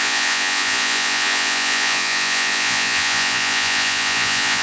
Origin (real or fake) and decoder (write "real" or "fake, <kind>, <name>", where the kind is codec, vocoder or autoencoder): fake, vocoder, Vocos